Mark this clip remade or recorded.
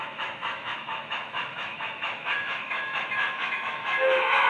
remade